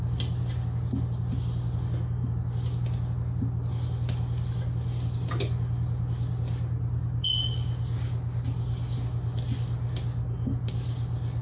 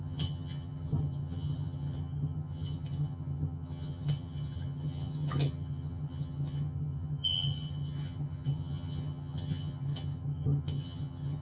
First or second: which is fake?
second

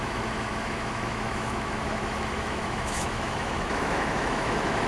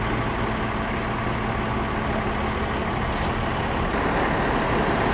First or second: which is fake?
first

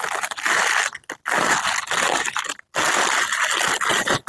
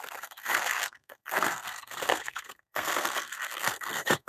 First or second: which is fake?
second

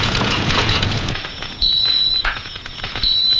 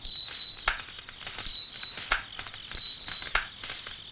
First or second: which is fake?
first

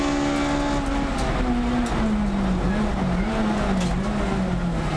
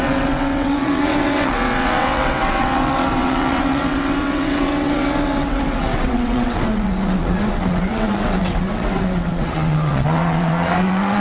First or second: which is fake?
second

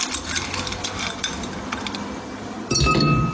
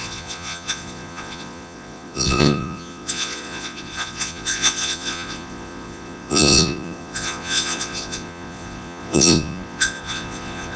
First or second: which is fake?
second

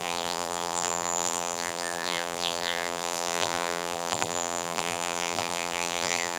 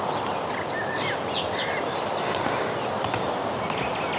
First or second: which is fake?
first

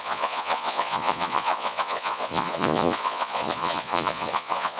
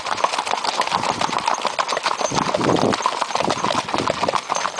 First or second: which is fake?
first